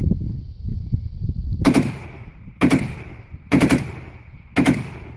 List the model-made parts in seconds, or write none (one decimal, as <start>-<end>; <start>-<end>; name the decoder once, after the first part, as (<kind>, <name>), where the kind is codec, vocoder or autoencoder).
0.7-3.8 (vocoder, BigVGAN v2)